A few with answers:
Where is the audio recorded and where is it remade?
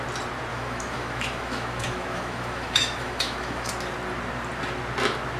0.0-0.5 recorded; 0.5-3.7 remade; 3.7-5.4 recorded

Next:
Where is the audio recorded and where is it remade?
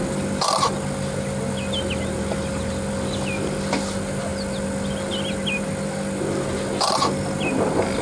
0.0-8.0 recorded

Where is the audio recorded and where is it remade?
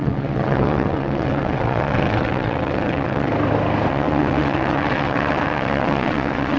0.0-3.3 remade; 3.3-3.9 recorded; 3.9-6.6 remade